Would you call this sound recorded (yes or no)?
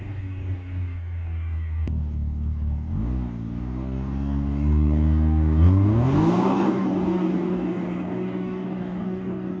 no